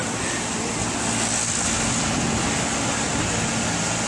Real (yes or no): yes